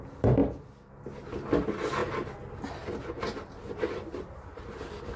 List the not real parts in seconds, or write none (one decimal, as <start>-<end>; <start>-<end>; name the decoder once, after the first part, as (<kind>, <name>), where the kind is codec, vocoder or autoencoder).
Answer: none